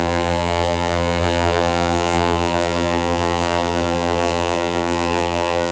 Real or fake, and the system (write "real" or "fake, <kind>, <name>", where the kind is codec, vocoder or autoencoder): fake, vocoder, BigVGAN v2